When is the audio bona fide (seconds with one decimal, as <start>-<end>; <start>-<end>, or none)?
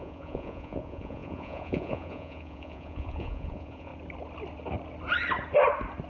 3.9-6.1